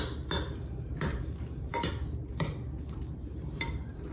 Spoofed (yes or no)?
yes